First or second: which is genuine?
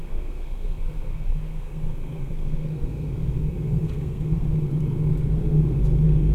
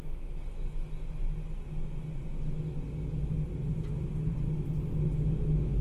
second